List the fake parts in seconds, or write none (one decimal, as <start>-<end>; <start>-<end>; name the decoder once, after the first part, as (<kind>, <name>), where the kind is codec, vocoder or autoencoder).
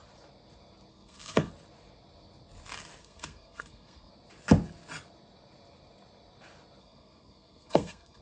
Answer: 0.9-1.5 (codec, SNAC); 3.0-4.1; 6.8-8.2